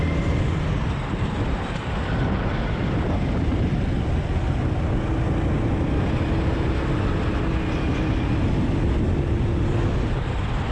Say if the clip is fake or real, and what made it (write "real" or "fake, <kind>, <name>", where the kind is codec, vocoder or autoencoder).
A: real